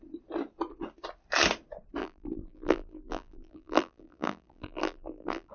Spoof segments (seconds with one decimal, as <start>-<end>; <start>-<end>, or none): 2.0-5.5

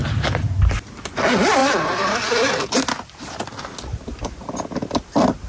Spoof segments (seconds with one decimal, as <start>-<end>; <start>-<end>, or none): none